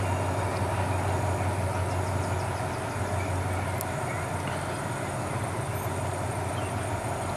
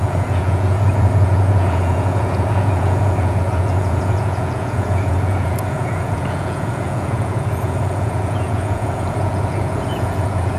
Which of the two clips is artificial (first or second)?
second